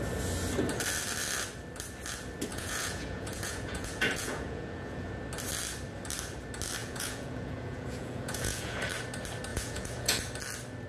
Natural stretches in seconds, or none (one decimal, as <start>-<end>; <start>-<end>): 0.0-2.5; 5.1-6.8; 8.8-9.5; 10.2-10.9